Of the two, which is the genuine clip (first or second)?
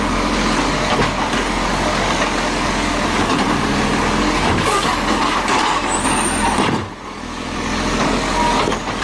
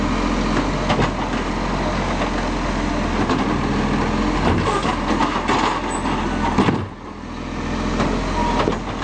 second